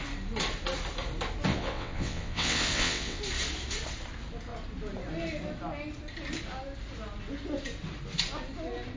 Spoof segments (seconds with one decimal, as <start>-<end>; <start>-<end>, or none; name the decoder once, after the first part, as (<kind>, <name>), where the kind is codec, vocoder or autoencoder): 1.5-3.2 (vocoder, WaveNeXt)